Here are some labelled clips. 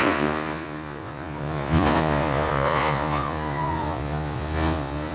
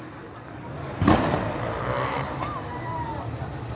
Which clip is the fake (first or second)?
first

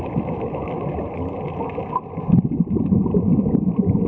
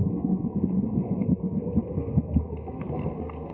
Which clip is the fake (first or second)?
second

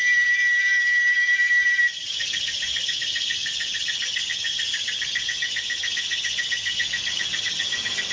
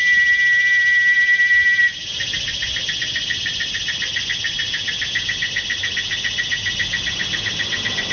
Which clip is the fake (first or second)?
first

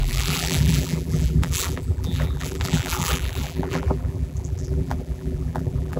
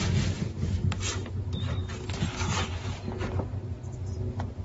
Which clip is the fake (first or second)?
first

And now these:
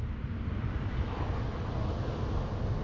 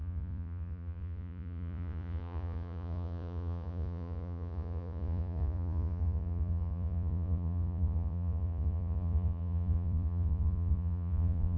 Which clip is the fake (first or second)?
second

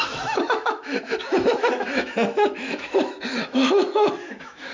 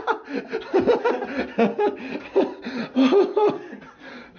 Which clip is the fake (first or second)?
first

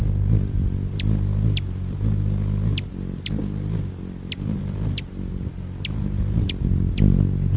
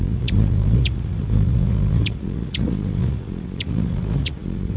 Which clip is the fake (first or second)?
second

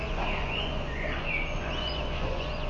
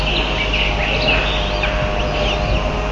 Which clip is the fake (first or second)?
first